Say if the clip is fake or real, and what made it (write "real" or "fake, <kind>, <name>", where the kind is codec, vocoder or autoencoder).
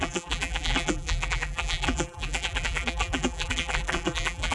fake, vocoder, BigVGAN v2